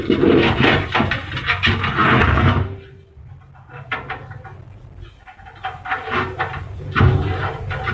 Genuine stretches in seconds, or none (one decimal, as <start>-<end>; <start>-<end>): 0.0-7.9